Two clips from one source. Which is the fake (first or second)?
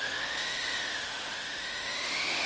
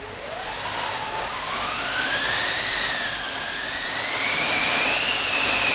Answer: first